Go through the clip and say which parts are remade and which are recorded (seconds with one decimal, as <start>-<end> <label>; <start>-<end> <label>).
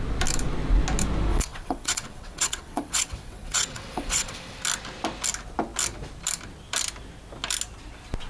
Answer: 0.0-1.3 recorded; 1.3-4.6 remade; 4.6-8.3 recorded